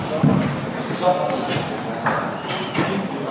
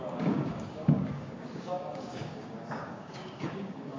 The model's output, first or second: second